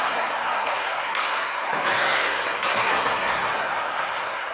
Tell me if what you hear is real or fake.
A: fake